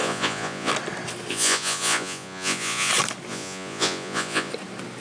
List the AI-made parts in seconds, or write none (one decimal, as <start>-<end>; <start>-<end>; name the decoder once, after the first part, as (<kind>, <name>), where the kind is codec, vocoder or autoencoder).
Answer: 0.0-0.7 (vocoder, Vocos); 1.3-2.9; 3.3-4.5